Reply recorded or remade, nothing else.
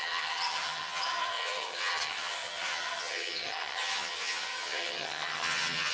remade